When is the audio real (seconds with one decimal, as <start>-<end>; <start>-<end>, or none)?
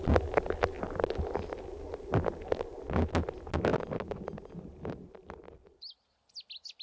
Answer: 0.0-6.8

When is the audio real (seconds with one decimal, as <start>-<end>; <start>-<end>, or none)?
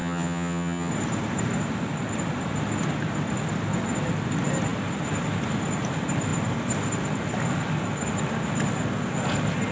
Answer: 0.9-9.7